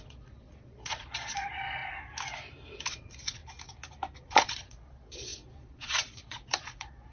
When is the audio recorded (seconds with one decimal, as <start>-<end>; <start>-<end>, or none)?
1.8-2.9; 3.4-4.2